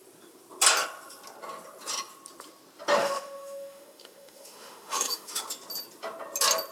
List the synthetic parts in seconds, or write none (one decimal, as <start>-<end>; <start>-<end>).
3.0-5.4